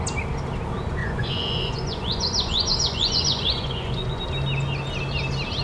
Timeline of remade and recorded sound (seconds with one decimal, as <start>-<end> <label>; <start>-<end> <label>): 0.0-1.0 recorded; 1.0-4.2 remade; 4.2-5.6 recorded

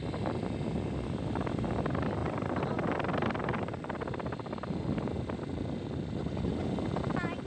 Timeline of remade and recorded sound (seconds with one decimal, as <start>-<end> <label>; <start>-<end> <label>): 0.0-7.5 recorded

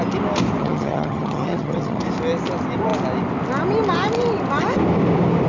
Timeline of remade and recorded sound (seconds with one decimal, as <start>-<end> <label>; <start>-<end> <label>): 0.0-0.6 recorded; 0.6-2.0 remade; 2.0-5.5 recorded

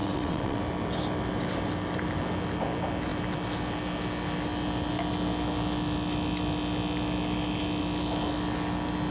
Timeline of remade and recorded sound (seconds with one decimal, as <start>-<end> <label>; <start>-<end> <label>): 0.0-0.6 remade; 0.6-9.1 recorded

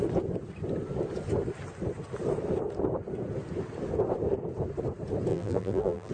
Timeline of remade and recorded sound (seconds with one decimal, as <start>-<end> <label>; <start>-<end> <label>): 0.0-5.3 recorded; 5.3-6.1 remade

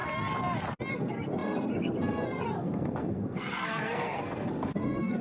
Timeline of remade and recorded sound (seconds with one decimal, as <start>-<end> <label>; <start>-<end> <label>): 0.0-0.9 recorded; 0.9-5.2 remade

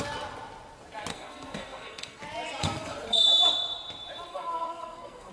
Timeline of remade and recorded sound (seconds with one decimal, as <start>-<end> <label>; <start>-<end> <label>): 0.0-1.1 recorded; 1.1-2.2 remade; 2.2-2.6 recorded; 2.6-3.2 remade; 3.2-4.3 recorded; 4.3-5.3 remade

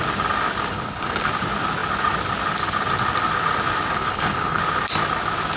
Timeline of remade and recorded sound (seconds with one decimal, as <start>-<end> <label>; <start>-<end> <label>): 0.0-0.7 recorded; 0.7-1.3 remade; 1.3-3.9 recorded; 3.9-4.6 remade; 4.6-5.6 recorded